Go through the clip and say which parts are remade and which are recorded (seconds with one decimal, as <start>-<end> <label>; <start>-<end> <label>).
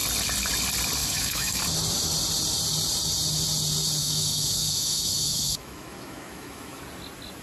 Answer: 0.0-1.0 recorded; 1.0-1.6 remade; 1.6-4.0 recorded; 4.0-6.8 remade; 6.8-7.4 recorded